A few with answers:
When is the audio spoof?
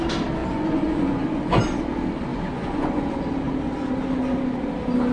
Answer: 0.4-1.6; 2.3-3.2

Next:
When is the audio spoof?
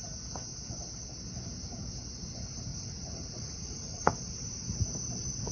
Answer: 2.7-4.1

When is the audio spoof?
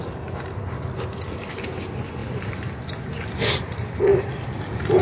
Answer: none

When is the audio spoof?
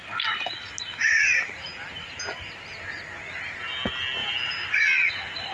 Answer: none